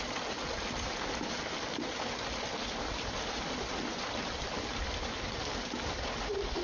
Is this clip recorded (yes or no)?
yes